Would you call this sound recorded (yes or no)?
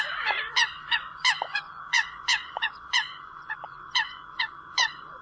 no